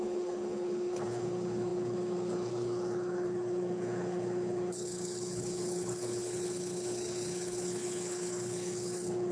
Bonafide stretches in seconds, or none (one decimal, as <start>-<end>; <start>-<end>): none